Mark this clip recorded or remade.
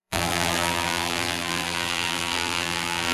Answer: remade